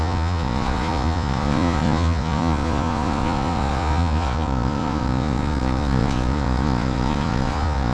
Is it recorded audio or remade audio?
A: remade